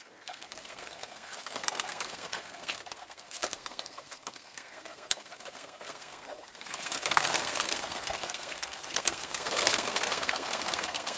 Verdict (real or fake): fake